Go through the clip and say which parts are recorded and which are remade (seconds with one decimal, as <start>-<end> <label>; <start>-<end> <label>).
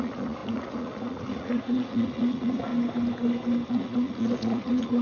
0.0-2.7 remade; 2.7-3.7 recorded; 3.7-5.0 remade